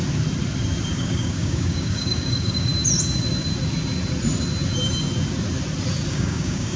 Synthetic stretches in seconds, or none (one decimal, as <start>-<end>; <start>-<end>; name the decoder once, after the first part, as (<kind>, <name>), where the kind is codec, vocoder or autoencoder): 0.9-2.7 (codec, DAC); 6.1-6.8